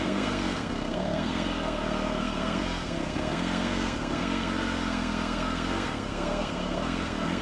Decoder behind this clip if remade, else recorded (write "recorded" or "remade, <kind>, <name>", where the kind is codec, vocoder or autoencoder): remade, codec, SNAC